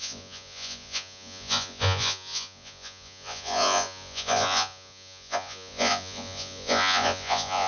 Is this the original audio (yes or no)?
no